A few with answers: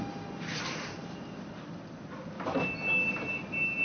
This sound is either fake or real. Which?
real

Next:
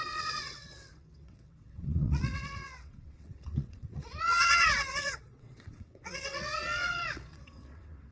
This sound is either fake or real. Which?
fake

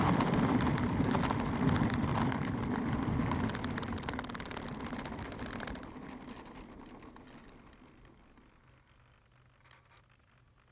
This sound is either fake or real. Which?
real